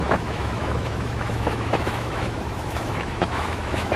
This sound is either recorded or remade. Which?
remade